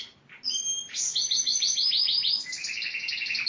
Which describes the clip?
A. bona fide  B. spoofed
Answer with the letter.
A